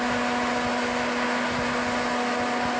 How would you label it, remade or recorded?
recorded